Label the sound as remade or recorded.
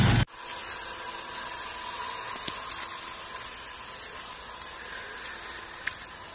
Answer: recorded